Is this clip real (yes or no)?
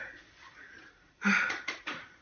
no